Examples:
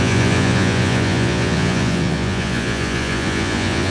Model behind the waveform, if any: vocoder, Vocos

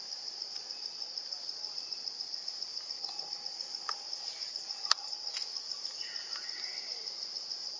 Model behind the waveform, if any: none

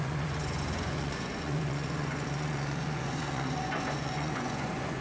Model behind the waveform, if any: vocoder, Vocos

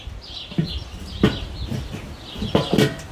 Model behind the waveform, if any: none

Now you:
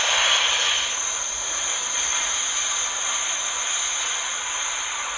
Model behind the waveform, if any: none